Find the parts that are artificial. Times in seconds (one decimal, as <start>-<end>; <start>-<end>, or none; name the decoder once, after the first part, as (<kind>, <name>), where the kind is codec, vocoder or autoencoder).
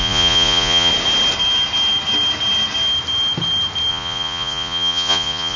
0.0-0.9 (vocoder, Vocos); 3.9-5.6